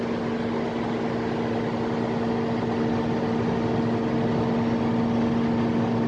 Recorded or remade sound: recorded